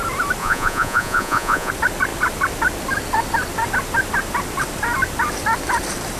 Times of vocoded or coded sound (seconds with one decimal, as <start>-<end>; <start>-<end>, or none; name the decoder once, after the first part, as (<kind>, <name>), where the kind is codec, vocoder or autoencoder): 0.4-1.7 (vocoder, Vocos)